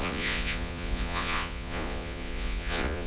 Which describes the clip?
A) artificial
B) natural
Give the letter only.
A